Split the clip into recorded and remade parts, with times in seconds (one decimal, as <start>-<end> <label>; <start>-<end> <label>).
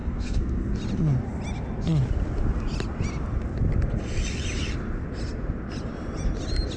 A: 0.0-0.7 remade; 0.7-6.8 recorded